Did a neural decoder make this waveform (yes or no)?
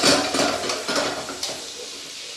no